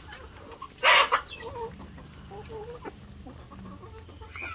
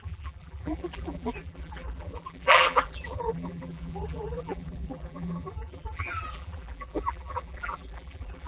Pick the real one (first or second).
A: first